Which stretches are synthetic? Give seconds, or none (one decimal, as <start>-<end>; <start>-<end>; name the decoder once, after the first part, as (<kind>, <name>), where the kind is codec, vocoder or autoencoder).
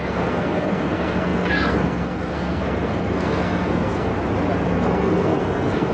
0.0-4.1 (codec, SNAC); 4.7-5.9